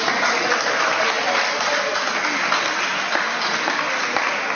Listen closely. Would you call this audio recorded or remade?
recorded